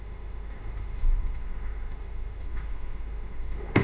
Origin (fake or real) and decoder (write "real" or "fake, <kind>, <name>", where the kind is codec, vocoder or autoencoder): fake, autoencoder, DAC-VAE